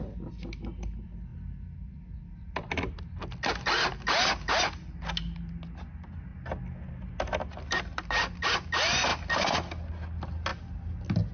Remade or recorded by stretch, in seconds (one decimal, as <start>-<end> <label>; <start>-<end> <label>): 0.0-11.3 recorded